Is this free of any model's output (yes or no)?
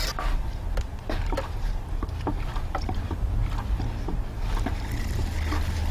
yes